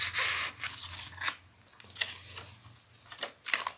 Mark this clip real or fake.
real